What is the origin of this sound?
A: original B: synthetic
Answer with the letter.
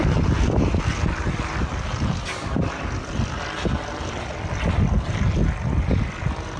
A